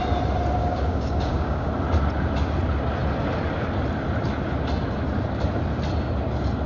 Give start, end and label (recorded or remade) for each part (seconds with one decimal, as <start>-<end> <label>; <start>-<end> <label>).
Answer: 0.0-0.6 recorded; 0.6-1.7 remade; 1.7-6.7 recorded